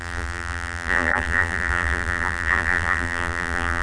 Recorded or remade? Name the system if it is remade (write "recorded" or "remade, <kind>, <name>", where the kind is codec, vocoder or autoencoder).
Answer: remade, vocoder, BigVGAN v2